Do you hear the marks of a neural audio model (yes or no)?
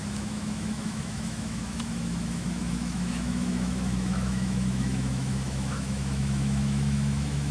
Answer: yes